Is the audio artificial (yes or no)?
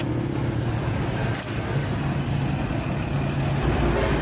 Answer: no